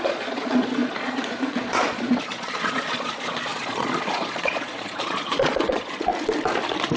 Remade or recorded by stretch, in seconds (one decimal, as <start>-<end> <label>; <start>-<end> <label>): 0.0-6.1 remade; 6.1-7.0 recorded